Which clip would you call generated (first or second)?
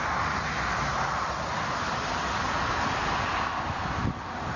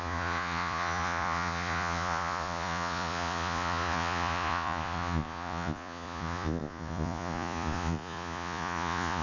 second